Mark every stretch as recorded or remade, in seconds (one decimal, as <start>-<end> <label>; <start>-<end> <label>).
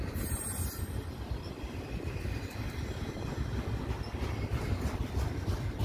0.0-1.5 remade; 1.5-5.0 recorded; 5.0-5.8 remade